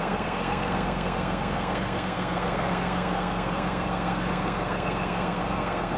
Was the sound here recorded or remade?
remade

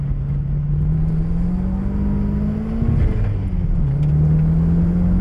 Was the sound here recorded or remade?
recorded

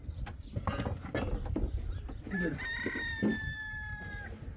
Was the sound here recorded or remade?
recorded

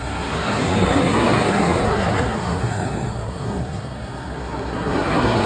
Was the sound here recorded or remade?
remade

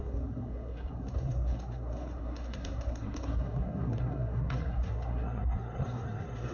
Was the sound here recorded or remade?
remade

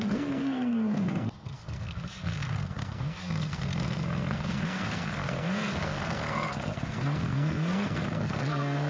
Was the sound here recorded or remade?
remade